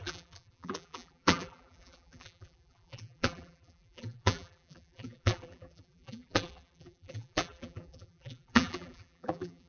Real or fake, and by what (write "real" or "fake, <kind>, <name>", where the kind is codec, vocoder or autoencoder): fake, vocoder, BigVGAN v2